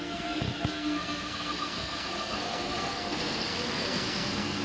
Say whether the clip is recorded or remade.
remade